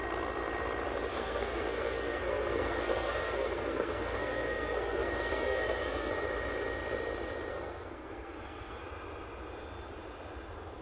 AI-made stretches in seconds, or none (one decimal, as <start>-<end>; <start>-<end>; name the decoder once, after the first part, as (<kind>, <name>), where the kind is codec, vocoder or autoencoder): 1.1-6.1 (codec, SNAC); 7.5-8.8